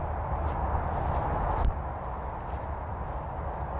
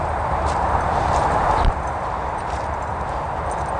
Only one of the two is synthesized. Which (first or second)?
second